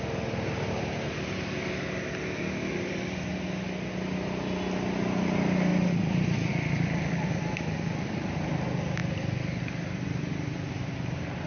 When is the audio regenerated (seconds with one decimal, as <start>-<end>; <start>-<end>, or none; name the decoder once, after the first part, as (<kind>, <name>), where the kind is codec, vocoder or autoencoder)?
none